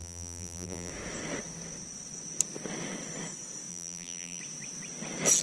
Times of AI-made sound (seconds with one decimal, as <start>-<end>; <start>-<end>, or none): 0.0-0.9; 3.7-4.4